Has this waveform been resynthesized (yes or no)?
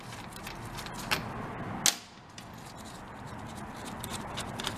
no